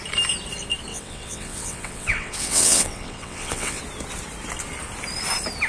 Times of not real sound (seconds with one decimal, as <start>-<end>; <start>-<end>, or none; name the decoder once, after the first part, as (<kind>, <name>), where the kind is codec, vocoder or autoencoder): 0.9-3.8 (vocoder, WaveNeXt)